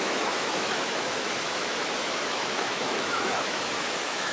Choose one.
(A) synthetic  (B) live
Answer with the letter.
A